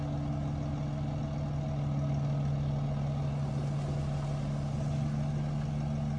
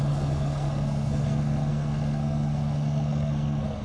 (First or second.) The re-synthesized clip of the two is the second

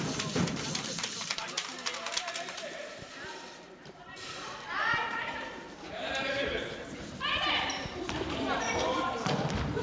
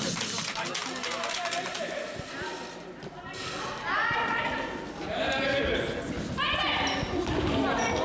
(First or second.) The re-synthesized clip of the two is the first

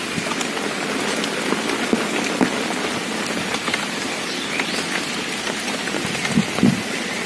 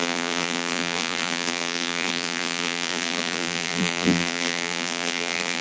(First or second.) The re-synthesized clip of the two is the second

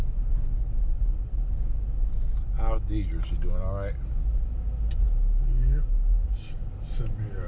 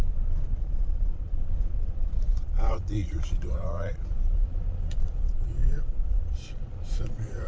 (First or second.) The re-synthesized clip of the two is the second